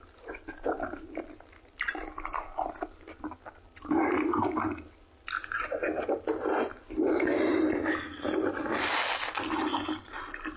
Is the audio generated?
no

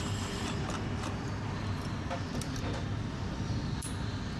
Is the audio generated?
no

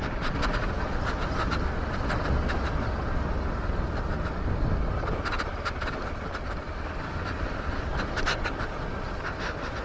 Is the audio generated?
no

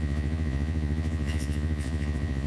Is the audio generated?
yes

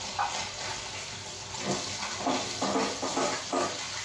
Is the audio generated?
no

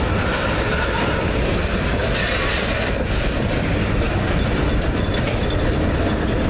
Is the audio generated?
no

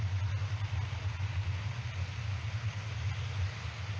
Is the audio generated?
no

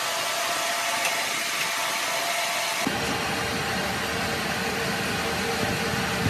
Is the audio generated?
no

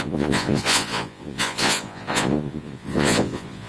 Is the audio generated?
yes